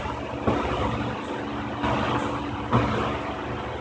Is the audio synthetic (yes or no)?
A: no